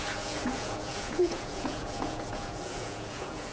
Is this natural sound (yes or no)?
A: no